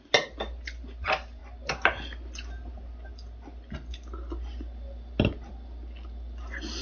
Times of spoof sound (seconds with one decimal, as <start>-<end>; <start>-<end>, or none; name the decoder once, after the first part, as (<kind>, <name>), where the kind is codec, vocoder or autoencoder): none